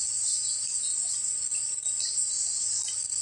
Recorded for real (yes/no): yes